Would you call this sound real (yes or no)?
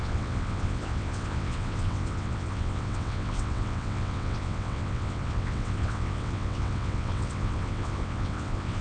no